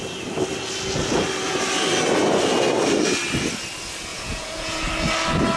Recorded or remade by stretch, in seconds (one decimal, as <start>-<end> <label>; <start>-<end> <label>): 0.0-4.1 recorded; 4.1-4.8 remade; 4.8-5.6 recorded